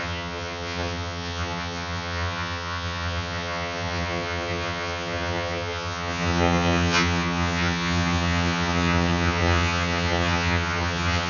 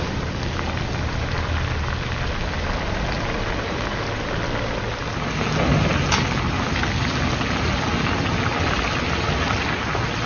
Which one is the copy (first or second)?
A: first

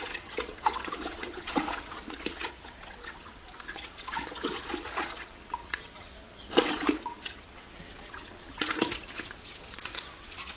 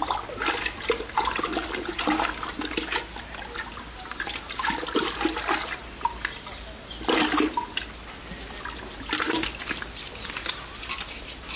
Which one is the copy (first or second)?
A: first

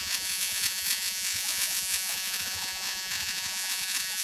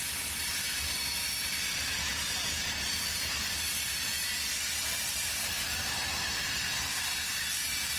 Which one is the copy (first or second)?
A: first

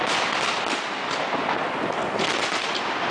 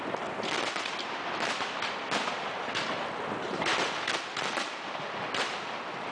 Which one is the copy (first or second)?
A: second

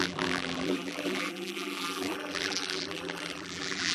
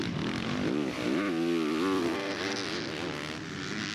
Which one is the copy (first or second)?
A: first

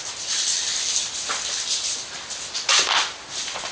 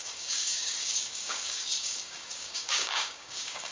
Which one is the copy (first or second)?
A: second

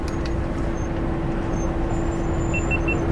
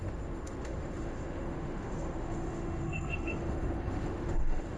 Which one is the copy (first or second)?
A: second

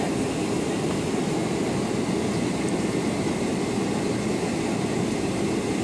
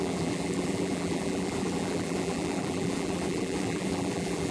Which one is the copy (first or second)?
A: second